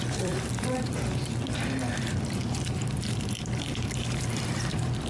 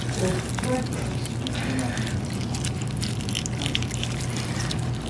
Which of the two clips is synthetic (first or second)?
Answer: first